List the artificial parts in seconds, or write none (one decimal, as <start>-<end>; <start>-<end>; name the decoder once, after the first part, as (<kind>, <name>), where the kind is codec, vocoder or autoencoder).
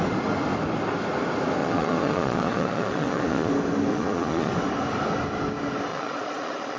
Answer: 1.6-3.5 (vocoder, Vocos); 3.9-4.5; 5.9-6.8